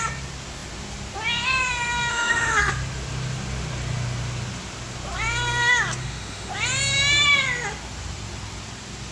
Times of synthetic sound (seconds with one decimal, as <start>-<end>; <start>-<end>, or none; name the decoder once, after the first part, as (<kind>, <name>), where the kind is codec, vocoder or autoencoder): 2.1-2.7 (autoencoder, DAC-VAE); 6.0-6.5